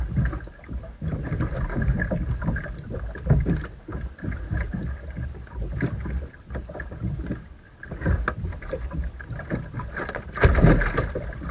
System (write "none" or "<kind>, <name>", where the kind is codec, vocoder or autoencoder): none